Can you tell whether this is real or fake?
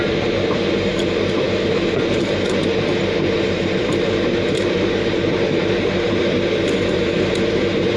fake